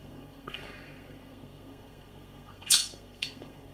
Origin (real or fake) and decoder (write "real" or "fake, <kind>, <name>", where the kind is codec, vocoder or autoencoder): fake, codec, SNAC